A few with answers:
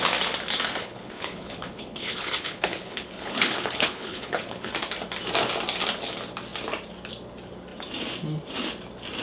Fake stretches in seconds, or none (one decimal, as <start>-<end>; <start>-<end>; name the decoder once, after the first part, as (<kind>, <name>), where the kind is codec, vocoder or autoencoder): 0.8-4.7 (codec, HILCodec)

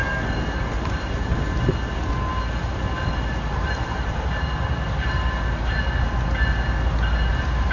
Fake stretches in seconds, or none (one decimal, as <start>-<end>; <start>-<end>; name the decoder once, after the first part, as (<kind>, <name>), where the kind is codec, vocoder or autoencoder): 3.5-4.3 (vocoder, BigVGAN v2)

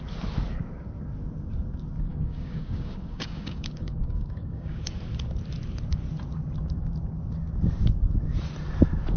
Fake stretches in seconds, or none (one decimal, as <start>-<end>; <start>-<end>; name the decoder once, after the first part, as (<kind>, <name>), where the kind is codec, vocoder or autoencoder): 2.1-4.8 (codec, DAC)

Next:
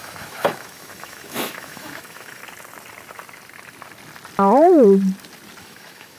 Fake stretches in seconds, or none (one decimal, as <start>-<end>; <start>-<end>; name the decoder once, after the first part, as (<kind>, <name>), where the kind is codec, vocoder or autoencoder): 0.0-2.4 (autoencoder, DAC-VAE); 5.6-6.2

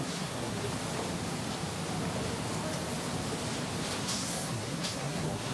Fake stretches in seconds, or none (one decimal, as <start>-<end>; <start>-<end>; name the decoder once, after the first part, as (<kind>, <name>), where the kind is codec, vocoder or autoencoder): 0.0-0.7 (codec, SNAC); 4.0-5.5

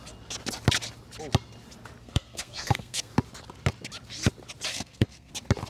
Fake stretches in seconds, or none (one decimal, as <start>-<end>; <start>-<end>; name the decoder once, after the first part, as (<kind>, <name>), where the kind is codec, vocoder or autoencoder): 2.0-3.1 (codec, SNAC); 4.7-5.3

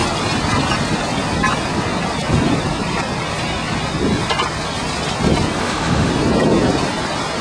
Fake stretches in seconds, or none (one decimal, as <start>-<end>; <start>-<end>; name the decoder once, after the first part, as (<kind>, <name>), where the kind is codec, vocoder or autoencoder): 5.6-6.1 (autoencoder, DAC-VAE)